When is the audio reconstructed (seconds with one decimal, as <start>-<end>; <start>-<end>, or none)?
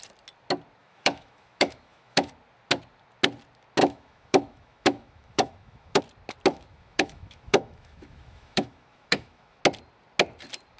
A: 0.8-2.3; 3.8-6.0; 6.5-9.6